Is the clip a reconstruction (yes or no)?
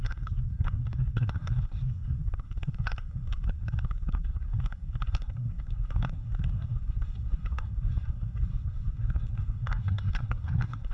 yes